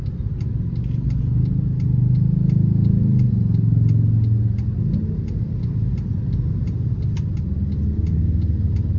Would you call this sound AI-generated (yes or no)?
no